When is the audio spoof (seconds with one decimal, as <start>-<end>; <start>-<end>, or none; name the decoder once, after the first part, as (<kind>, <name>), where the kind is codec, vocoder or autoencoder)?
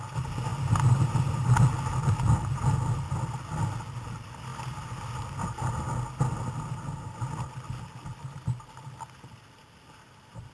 none